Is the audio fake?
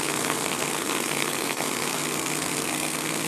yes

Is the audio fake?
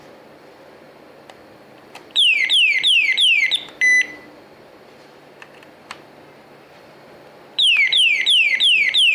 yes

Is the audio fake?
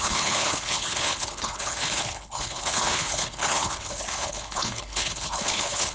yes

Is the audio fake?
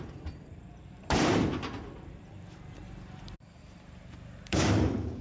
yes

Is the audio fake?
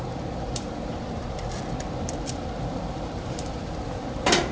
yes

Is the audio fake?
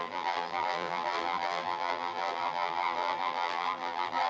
yes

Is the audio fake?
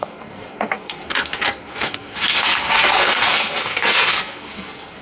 yes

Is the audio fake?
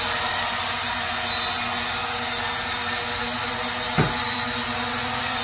no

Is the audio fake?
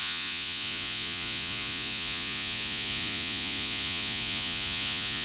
yes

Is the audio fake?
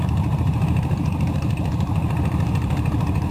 yes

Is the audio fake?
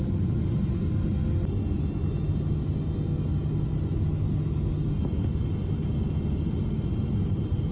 no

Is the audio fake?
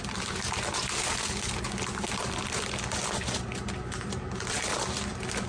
no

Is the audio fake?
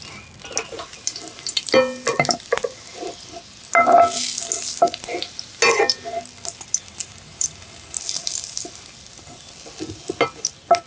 no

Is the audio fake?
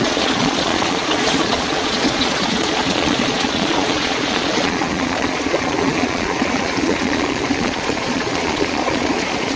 yes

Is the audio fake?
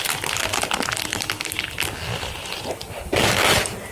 no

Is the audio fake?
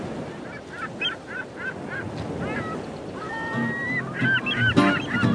no